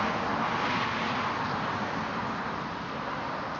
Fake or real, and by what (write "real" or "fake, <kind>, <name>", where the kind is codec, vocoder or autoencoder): real